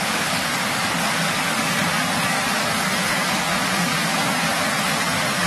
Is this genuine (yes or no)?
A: no